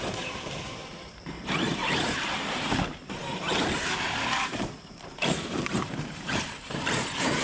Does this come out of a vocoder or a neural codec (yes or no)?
yes